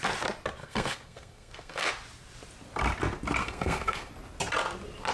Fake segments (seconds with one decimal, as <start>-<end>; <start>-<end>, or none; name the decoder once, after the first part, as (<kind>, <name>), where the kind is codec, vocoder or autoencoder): 0.6-1.9 (codec, SNAC); 3.4-4.1